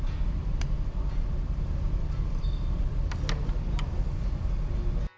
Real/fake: real